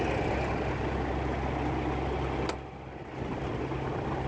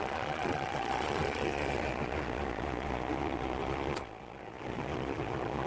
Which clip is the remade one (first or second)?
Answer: second